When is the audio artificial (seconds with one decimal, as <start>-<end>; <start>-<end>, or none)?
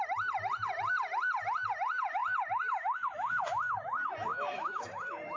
4.3-5.4